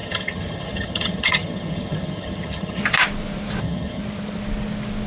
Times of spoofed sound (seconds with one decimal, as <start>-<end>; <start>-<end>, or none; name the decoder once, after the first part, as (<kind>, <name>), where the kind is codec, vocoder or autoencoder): 0.0-2.8 (vocoder, HiFi-GAN); 3.6-4.0